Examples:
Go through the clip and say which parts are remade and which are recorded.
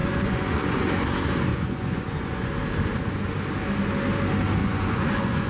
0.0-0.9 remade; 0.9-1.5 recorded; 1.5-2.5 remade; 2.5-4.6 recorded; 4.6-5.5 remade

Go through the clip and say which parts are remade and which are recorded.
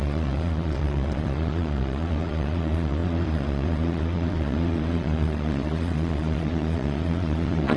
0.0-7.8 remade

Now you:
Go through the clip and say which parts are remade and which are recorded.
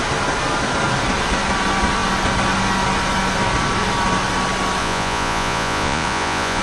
0.0-4.8 recorded; 4.8-6.6 remade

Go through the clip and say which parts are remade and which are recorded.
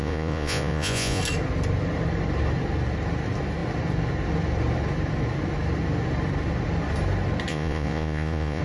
0.0-1.2 remade; 1.2-7.5 recorded; 7.5-8.6 remade